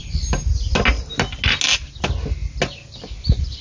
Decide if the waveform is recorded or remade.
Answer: recorded